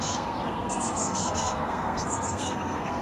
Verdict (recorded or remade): remade